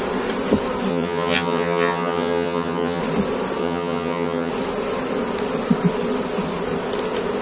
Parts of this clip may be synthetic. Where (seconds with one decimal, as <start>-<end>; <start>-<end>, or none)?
0.9-3.0; 3.6-4.5